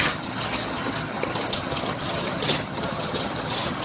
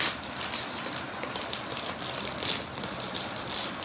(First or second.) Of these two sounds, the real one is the second